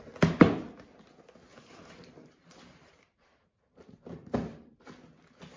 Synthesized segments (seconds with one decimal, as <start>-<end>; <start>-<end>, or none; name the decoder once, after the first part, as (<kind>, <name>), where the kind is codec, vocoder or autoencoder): 1.5-4.9 (vocoder, BigVGAN v2)